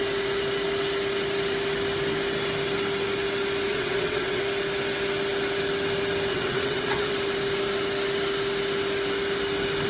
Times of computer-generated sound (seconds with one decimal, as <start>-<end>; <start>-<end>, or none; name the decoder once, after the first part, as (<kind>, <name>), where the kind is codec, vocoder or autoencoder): 3.7-4.4 (vocoder, WaveNeXt); 6.3-7.1